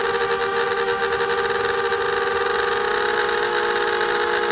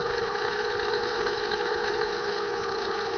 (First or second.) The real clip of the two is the first